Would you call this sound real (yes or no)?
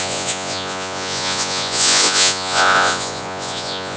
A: no